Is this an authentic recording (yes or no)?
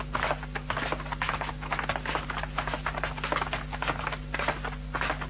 yes